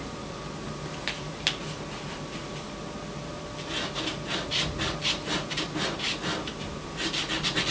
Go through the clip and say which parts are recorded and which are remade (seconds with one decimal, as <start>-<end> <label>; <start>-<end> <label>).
0.0-7.7 recorded

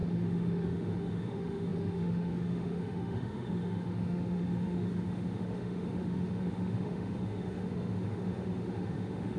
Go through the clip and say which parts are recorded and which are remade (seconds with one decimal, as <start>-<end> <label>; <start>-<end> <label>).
0.0-9.4 remade